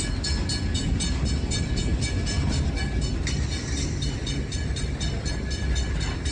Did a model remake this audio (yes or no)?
no